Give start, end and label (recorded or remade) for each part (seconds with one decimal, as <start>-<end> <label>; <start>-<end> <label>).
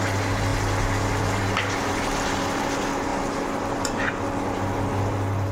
0.0-5.5 recorded